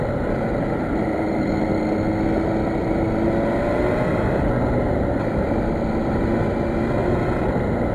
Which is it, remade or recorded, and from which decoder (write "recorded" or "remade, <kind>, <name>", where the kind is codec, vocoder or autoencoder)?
recorded